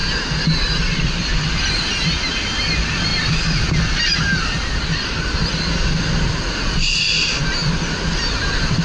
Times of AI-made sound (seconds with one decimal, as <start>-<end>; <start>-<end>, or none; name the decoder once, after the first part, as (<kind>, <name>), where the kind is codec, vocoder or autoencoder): none